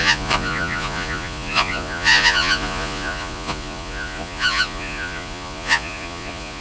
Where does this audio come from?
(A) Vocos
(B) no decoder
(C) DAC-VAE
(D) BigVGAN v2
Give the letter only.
A